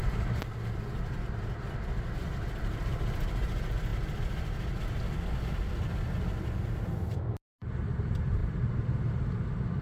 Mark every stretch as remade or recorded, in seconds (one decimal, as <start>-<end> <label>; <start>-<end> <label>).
0.0-9.8 recorded